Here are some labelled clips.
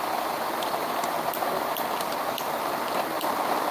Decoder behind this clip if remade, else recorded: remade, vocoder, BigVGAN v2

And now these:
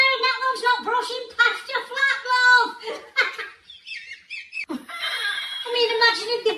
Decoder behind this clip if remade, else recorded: recorded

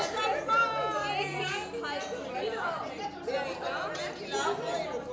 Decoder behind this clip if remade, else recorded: recorded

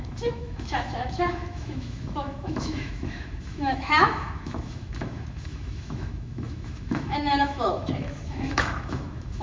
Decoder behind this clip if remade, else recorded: remade, autoencoder, DAC-VAE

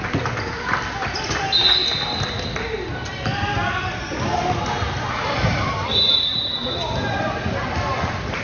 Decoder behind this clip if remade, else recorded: recorded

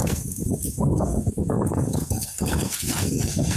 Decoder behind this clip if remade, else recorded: remade, codec, SNAC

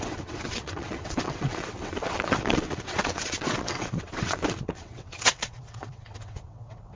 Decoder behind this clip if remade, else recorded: remade, vocoder, WaveNeXt